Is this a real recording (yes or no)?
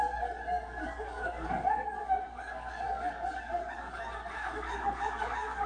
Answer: no